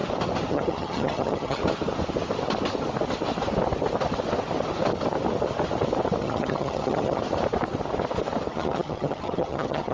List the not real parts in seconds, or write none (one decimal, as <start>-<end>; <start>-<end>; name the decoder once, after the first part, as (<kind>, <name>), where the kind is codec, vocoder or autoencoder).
0.5-1.6 (vocoder, HiFi-GAN); 6.2-7.2; 8.5-9.9